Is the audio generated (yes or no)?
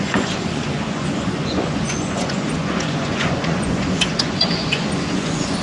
yes